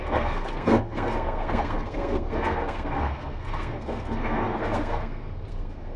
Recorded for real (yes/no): no